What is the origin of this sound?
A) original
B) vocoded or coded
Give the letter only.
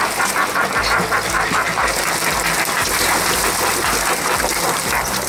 A